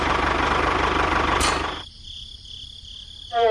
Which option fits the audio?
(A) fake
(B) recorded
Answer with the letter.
A